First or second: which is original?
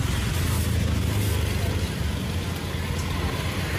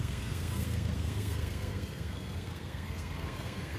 first